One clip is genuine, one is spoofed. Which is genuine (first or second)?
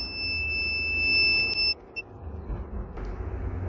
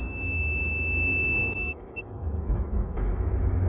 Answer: first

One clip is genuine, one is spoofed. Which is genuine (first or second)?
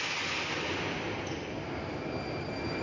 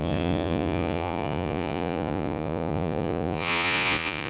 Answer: first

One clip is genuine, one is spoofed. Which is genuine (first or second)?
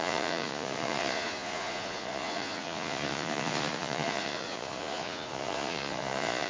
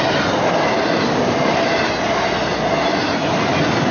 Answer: second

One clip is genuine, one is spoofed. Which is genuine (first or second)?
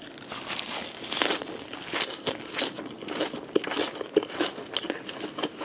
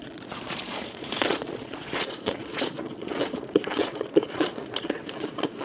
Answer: first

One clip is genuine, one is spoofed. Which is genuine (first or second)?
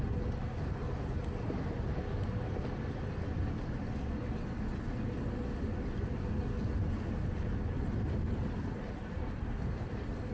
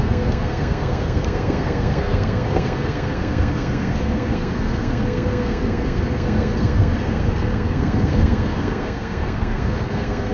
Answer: first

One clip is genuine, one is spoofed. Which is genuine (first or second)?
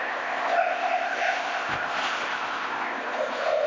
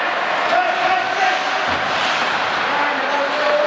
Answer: second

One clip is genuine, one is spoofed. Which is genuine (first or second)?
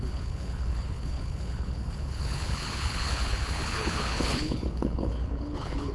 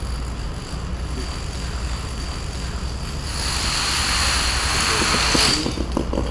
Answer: second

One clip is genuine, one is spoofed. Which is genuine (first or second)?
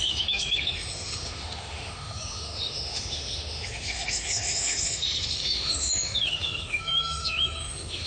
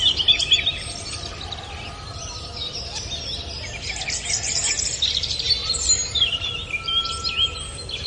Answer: second